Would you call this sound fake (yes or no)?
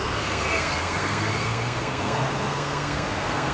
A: yes